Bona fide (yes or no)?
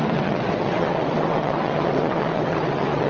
no